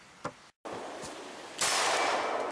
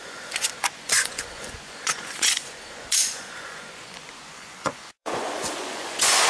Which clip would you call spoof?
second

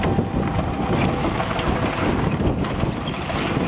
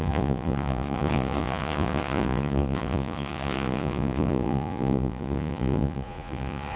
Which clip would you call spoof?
second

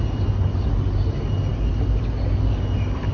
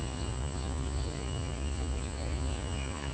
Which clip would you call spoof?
second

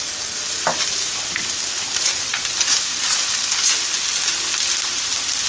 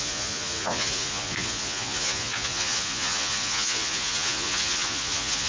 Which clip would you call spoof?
second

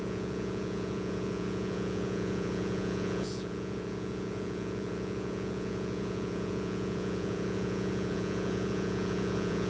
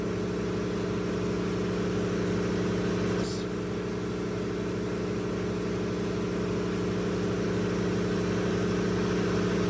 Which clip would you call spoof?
first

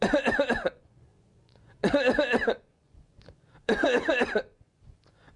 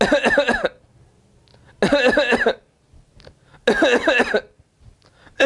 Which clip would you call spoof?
first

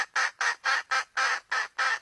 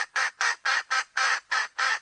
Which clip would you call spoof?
second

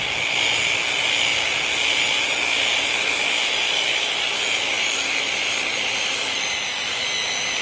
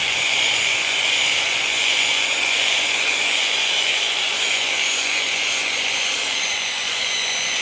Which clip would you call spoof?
second